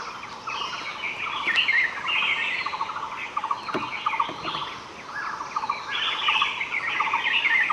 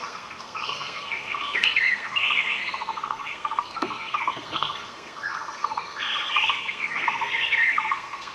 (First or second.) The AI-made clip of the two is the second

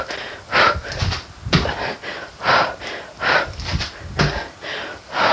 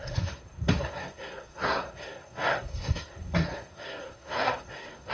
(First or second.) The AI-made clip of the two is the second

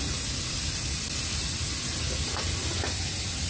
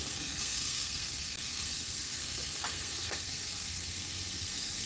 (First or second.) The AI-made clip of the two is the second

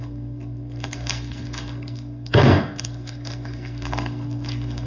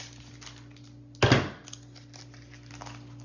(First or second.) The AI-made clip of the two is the first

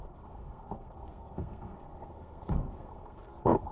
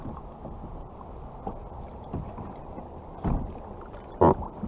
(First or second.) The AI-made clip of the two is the first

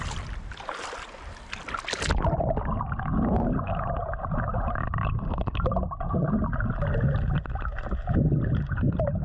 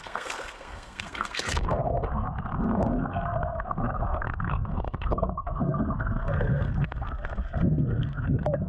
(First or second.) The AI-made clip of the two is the second